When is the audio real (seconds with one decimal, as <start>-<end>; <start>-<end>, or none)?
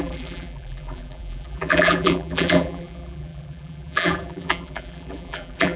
none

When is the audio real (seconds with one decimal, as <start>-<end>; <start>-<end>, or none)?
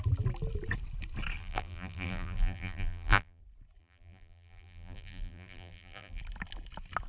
0.0-1.4; 3.4-3.8; 6.2-7.1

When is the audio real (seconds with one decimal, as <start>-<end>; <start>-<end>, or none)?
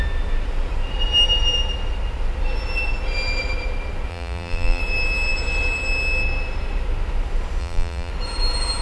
0.0-4.1; 4.8-7.6; 8.1-8.8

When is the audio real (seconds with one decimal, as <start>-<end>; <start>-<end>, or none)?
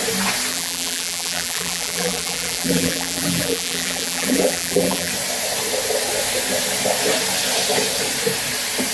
0.0-0.5; 5.1-8.9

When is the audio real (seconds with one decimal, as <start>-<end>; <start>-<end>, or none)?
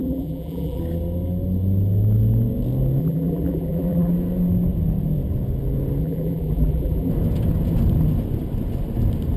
0.8-3.0; 4.1-6.0; 7.1-9.4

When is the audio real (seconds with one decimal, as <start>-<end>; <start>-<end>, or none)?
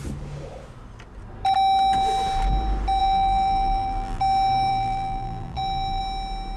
0.0-3.0; 4.2-4.7; 6.0-6.6